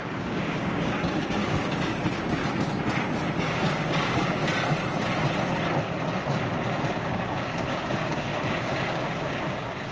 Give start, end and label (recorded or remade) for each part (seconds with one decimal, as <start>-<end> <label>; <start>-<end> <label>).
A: 0.0-2.4 remade; 2.4-3.4 recorded; 3.4-4.4 remade; 4.4-7.0 recorded; 7.0-9.9 remade